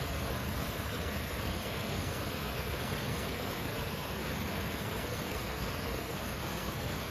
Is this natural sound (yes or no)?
no